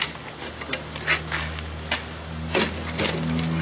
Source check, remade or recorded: recorded